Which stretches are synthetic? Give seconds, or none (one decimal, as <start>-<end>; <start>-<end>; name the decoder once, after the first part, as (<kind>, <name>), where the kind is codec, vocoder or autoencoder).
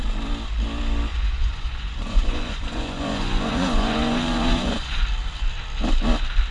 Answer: 1.1-5.0 (vocoder, Vocos)